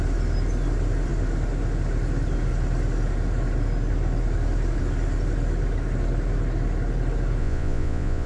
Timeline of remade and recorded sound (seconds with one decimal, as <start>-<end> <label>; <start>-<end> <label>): 0.0-7.4 recorded; 7.4-8.3 remade